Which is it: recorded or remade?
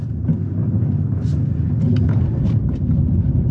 recorded